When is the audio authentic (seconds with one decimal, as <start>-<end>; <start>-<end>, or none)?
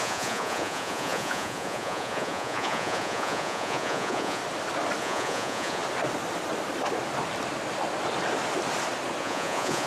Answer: 4.4-5.0; 5.8-9.2